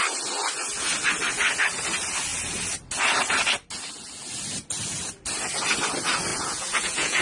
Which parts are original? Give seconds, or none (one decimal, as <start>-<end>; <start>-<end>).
0.0-6.3